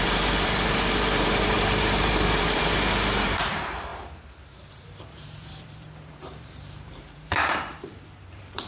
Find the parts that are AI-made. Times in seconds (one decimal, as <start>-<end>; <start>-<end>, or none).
0.0-3.9; 4.7-8.7